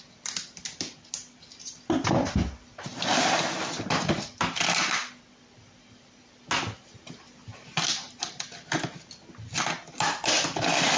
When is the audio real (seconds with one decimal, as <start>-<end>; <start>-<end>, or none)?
0.0-11.0